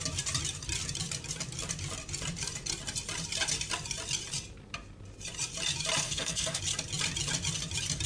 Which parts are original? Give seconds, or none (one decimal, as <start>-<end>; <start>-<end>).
0.0-6.0; 6.6-8.1